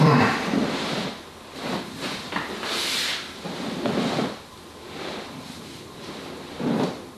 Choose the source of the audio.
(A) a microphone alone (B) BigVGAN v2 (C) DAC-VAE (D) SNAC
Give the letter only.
B